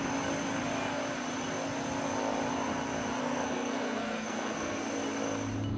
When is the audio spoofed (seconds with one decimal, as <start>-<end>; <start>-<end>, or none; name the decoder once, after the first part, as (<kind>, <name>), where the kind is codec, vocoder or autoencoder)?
3.2-4.9 (codec, SNAC)